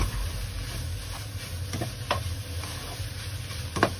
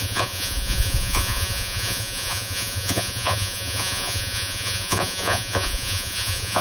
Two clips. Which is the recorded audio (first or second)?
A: first